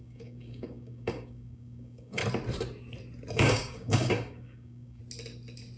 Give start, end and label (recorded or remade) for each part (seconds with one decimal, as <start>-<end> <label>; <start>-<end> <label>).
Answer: 0.0-2.2 remade; 2.2-3.3 recorded; 3.3-5.0 remade; 5.0-5.8 recorded